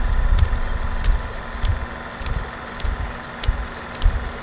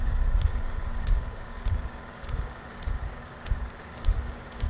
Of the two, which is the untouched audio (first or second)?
first